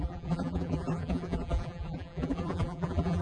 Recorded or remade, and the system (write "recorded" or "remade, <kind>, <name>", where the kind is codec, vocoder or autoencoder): remade, vocoder, BigVGAN v2